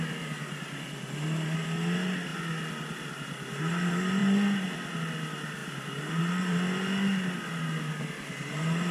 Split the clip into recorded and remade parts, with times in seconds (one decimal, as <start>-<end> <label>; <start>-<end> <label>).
0.0-5.6 recorded; 5.6-6.5 remade; 6.5-8.9 recorded